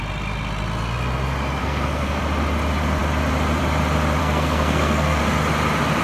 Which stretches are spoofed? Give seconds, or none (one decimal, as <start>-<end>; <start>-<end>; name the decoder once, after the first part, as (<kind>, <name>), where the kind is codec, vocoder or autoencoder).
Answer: 1.6-2.2 (codec, SNAC); 4.2-5.2